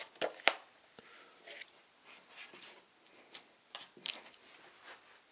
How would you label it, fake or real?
real